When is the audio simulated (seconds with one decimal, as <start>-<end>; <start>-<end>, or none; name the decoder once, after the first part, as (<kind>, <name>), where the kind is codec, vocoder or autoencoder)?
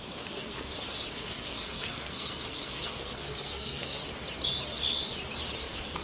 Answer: 0.0-0.7 (codec, SNAC); 1.2-4.0; 5.6-6.0